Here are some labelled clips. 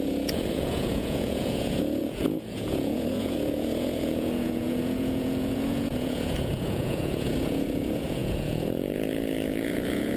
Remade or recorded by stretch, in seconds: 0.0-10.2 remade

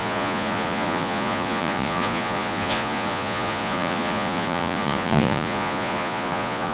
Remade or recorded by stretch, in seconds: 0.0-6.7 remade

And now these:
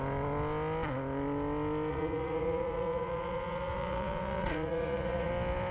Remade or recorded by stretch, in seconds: 0.0-1.9 recorded; 1.9-5.3 remade; 5.3-5.7 recorded

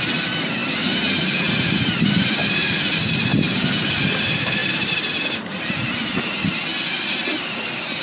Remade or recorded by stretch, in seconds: 0.0-0.6 remade; 0.6-1.5 recorded; 1.5-4.6 remade; 4.6-8.0 recorded

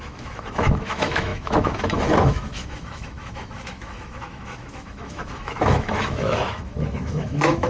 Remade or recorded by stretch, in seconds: 0.0-7.7 remade

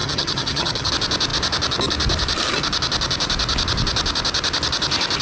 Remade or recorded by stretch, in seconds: 0.0-0.9 remade; 0.9-5.2 recorded